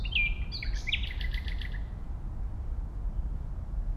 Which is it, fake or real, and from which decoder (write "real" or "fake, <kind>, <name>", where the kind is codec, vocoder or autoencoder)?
real